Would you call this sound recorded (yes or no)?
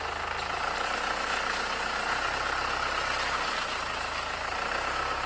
yes